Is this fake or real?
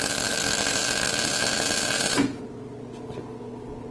real